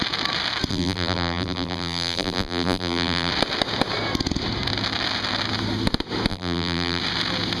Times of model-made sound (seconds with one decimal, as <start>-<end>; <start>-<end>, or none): 0.7-3.3; 6.3-7.0